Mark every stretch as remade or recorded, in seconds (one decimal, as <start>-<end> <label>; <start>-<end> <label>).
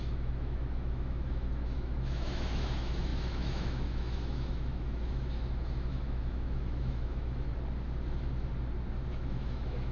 0.0-7.5 remade; 7.5-9.1 recorded; 9.1-9.9 remade